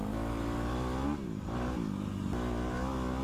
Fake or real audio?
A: real